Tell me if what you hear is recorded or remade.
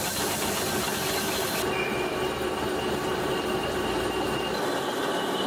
recorded